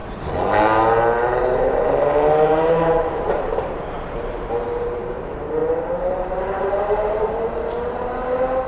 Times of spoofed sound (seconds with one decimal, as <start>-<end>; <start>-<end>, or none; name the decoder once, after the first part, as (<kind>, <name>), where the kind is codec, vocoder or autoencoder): 1.4-8.7 (vocoder, BigVGAN v2)